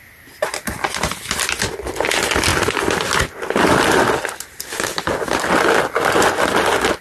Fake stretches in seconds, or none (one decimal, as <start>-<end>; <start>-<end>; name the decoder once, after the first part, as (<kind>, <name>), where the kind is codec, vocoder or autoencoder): none